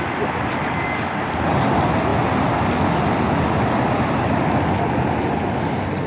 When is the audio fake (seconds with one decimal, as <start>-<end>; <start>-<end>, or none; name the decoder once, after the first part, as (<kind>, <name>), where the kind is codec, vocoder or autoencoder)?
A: none

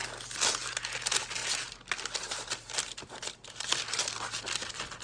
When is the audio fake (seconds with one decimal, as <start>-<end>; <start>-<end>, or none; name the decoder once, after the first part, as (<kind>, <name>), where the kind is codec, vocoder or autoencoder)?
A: none

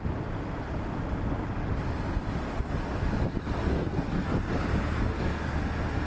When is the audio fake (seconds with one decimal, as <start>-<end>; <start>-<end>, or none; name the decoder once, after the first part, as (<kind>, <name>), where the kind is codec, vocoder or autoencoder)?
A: 3.6-4.3 (codec, SNAC); 5.1-5.6

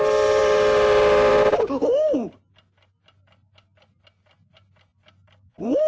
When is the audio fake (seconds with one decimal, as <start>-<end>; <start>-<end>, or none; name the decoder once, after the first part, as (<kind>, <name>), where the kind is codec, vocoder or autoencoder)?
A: none

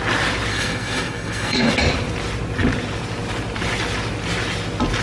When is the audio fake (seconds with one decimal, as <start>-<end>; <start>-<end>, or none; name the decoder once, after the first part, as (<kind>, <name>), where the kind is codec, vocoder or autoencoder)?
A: 0.5-1.7 (codec, SNAC)